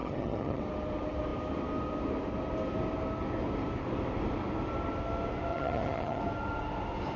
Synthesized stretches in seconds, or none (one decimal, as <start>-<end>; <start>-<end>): 0.0-0.6; 5.5-6.2